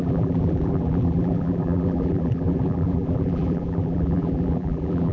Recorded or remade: remade